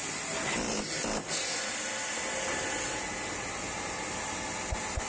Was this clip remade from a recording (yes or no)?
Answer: no